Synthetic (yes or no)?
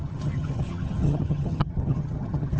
yes